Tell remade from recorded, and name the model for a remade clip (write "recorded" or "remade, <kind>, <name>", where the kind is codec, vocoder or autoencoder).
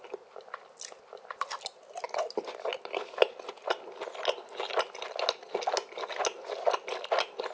recorded